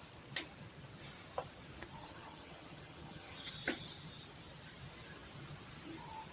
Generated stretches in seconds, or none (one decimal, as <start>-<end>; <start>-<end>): 2.0-3.5